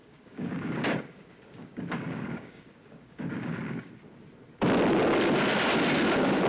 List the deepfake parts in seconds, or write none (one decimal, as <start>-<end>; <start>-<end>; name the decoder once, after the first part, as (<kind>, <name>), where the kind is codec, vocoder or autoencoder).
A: 0.0-3.9 (codec, DAC)